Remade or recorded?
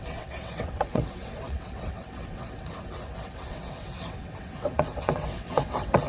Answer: remade